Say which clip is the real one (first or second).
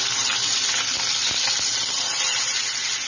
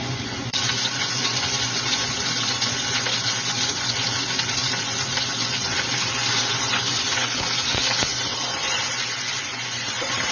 first